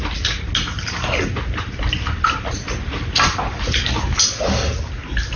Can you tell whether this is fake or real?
real